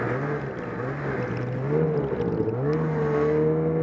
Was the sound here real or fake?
real